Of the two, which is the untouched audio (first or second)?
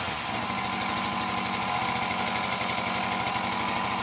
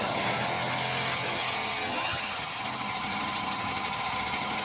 first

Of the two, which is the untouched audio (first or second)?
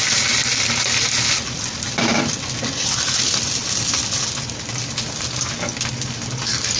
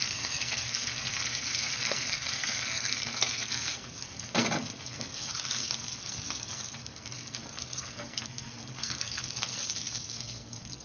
first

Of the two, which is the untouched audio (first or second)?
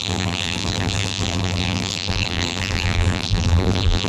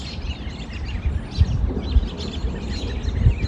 second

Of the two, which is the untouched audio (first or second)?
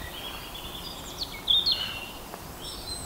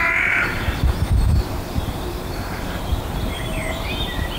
first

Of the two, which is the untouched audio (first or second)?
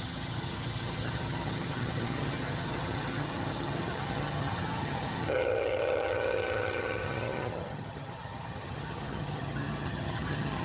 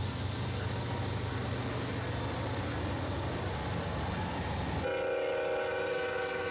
second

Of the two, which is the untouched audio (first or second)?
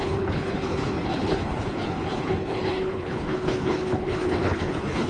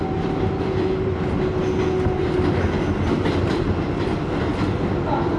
second